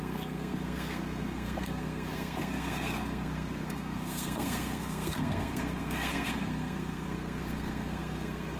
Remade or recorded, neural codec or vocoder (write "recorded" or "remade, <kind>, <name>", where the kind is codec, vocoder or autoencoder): remade, codec, SNAC